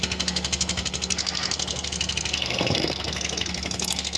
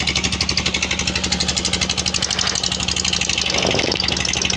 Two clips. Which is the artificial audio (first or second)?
first